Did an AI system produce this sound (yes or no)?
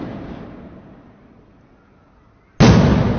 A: no